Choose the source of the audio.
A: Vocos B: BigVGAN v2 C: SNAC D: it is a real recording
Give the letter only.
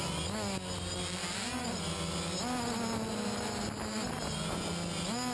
D